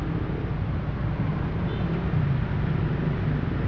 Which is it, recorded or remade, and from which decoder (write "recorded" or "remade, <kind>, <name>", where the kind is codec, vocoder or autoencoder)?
recorded